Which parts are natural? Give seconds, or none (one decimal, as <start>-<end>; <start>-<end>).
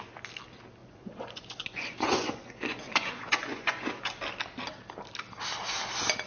0.0-0.8; 3.9-6.3